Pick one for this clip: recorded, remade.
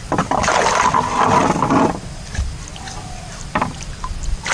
recorded